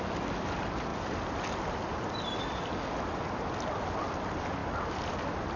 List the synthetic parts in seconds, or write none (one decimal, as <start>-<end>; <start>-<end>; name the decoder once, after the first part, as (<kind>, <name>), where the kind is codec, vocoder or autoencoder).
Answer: 0.9-2.4 (vocoder, BigVGAN v2); 4.6-5.6